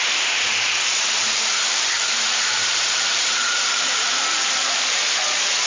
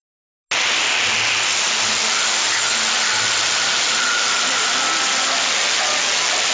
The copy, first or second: first